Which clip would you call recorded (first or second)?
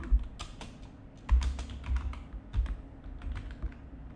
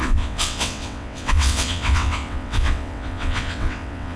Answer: first